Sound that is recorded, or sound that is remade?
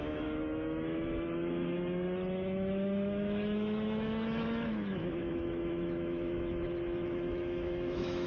remade